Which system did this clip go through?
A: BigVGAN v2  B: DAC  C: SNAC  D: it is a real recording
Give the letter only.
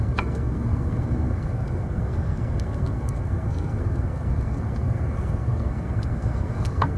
C